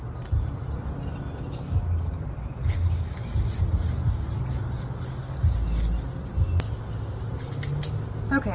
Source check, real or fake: real